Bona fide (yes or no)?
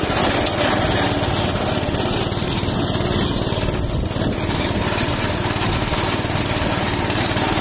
yes